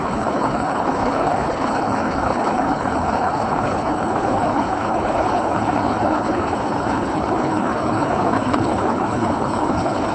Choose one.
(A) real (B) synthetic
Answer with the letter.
B